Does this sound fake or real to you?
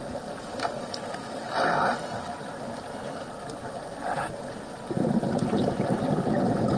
real